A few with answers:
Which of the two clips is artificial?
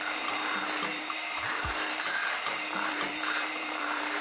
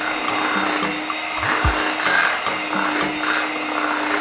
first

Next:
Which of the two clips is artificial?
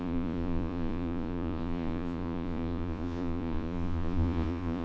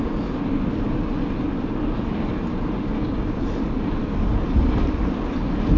first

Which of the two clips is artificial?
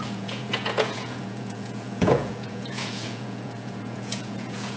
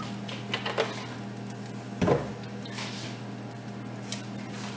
first